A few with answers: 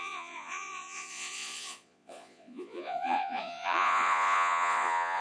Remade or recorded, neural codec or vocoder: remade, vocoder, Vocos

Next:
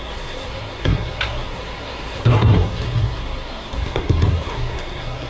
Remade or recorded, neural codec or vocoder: remade, codec, SNAC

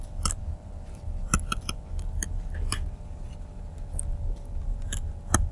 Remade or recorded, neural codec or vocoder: recorded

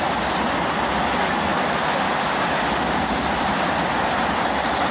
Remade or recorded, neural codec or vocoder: recorded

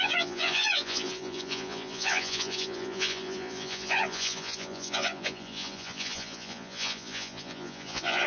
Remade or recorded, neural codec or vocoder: remade, vocoder, Vocos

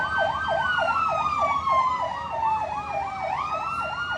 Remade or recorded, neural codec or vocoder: recorded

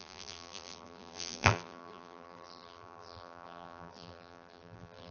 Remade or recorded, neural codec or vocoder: remade, vocoder, BigVGAN v2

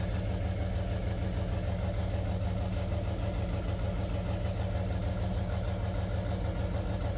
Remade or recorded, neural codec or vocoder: recorded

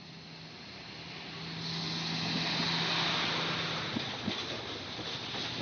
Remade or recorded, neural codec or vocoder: recorded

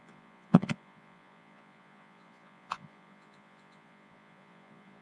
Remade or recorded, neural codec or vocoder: remade, vocoder, Vocos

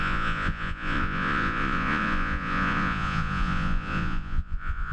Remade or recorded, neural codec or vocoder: remade, vocoder, Vocos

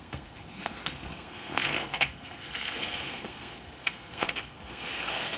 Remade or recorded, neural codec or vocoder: remade, codec, SNAC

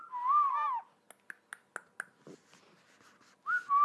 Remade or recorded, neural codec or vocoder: recorded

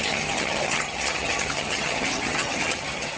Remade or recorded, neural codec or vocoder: remade, vocoder, HiFi-GAN